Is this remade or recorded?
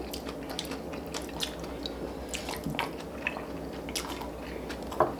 recorded